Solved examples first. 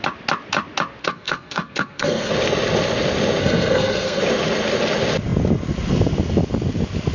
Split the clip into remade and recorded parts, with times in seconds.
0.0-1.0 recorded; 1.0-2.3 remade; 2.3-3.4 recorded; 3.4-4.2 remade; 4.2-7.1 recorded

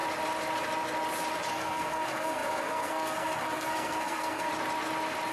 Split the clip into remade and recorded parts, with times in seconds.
0.0-1.5 recorded; 1.5-4.5 remade; 4.5-5.3 recorded

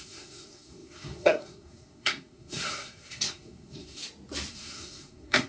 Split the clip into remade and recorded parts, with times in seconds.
0.0-4.0 remade; 4.0-4.5 recorded; 4.5-5.5 remade

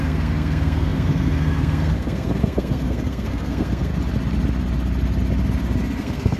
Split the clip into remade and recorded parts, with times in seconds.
0.0-3.9 remade; 3.9-6.0 recorded; 6.0-6.4 remade